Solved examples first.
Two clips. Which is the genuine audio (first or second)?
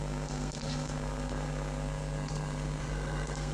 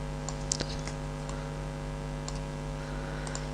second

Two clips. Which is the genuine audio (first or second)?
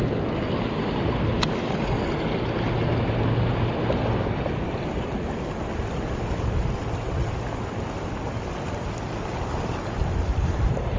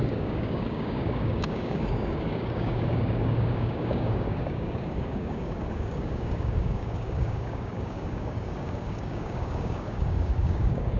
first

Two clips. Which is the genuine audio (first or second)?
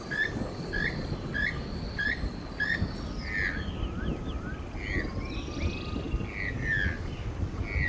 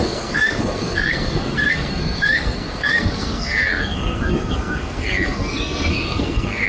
first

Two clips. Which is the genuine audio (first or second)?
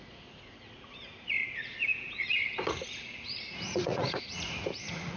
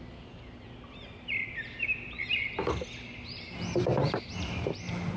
second